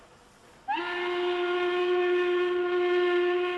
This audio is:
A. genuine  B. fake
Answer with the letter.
A